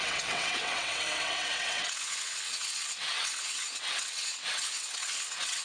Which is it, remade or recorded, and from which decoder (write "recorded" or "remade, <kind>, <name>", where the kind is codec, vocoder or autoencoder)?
remade, vocoder, WaveNeXt